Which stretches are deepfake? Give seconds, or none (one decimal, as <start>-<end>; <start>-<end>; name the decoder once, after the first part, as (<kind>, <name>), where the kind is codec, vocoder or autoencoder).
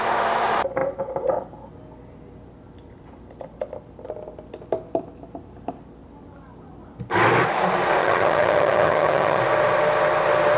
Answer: 8.0-9.4 (vocoder, HiFi-GAN)